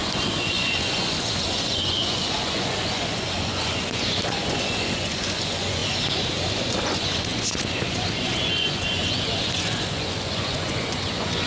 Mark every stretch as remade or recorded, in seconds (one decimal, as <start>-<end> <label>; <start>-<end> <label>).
0.0-11.5 remade